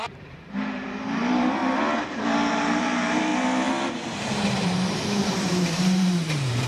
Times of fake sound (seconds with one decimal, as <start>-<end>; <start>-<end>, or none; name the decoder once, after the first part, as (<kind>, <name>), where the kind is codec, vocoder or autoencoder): 0.0-1.6 (vocoder, BigVGAN v2); 2.5-3.3; 3.9-6.7